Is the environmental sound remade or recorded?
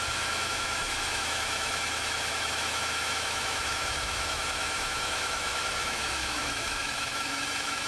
remade